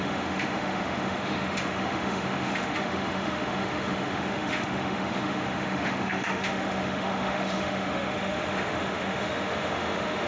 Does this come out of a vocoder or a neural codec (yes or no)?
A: yes